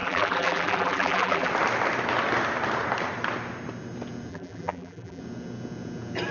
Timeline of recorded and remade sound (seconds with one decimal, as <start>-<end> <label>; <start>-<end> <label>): 0.0-1.5 remade; 1.5-4.3 recorded; 4.3-5.2 remade; 5.2-6.3 recorded